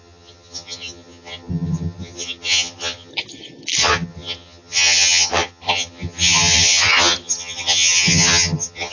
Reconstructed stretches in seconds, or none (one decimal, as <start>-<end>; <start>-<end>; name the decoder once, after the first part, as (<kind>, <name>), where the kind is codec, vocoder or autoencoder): 0.0-3.1 (vocoder, HiFi-GAN); 3.8-8.9